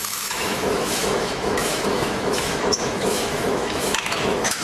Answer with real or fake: fake